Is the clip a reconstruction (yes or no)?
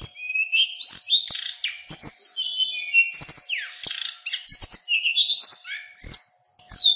no